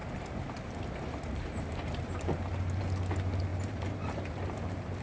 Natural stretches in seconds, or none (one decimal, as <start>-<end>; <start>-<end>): 2.8-3.5; 4.3-5.0